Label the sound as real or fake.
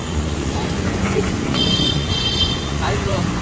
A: fake